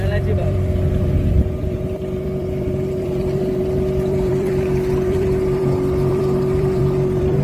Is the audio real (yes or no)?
no